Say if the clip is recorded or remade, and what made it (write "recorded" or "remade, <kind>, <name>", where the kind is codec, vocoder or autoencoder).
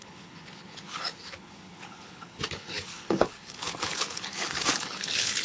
remade, codec, HILCodec